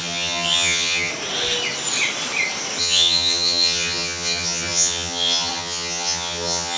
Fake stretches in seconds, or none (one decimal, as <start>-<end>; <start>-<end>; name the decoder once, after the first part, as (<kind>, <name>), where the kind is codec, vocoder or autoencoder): 0.0-1.1 (vocoder, HiFi-GAN); 2.8-6.8